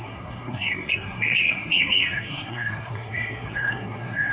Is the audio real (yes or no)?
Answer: no